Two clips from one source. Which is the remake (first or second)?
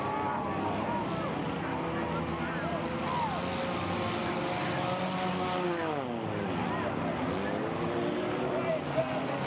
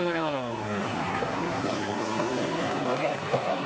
second